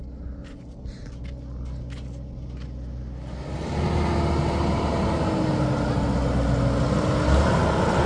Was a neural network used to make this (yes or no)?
no